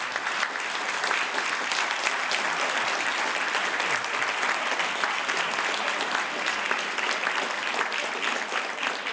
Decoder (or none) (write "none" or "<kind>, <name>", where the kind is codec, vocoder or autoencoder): none